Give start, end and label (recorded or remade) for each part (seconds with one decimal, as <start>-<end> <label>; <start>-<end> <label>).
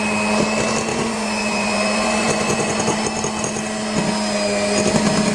0.0-0.9 recorded; 0.9-3.0 remade; 3.0-5.3 recorded